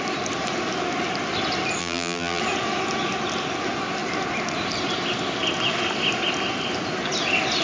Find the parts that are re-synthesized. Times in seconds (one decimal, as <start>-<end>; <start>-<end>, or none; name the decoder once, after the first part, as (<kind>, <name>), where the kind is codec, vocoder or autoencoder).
1.8-2.4 (vocoder, BigVGAN v2)